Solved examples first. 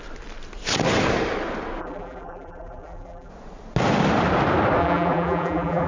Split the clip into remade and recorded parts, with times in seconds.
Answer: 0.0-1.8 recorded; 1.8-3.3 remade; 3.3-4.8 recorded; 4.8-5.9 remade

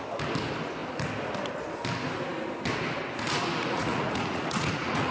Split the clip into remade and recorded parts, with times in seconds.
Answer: 0.0-3.5 recorded; 3.5-5.1 remade

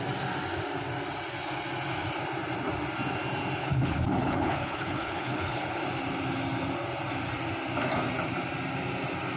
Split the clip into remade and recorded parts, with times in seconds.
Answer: 0.0-3.6 recorded; 3.6-5.8 remade; 5.8-9.4 recorded

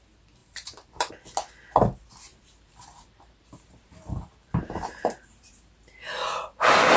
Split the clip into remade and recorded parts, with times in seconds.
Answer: 0.0-0.4 recorded; 0.4-1.1 remade; 1.1-2.3 recorded; 2.3-6.1 remade; 6.1-7.0 recorded